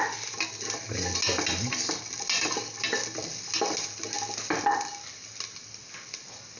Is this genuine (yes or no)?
yes